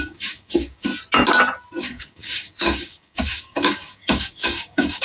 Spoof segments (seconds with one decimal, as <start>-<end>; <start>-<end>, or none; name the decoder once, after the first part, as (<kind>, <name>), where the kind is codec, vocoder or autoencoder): 0.0-0.9 (codec, DAC); 1.8-5.0